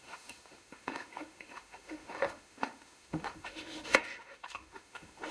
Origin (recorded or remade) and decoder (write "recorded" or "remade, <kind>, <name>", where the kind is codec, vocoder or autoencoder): remade, autoencoder, DAC-VAE